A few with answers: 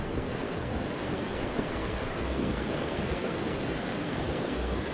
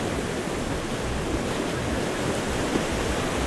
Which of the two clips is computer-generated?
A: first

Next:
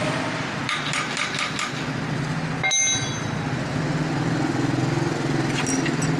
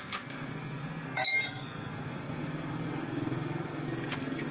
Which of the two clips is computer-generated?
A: second